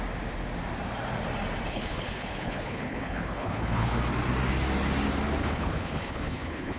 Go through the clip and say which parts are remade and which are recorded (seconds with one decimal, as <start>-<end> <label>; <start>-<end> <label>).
0.0-1.7 recorded; 1.7-4.0 remade; 4.0-5.4 recorded; 5.4-6.8 remade